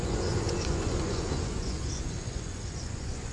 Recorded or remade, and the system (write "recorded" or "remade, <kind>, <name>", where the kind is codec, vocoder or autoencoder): remade, vocoder, Vocos